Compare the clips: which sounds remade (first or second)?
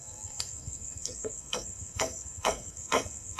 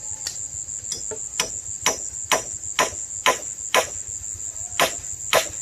first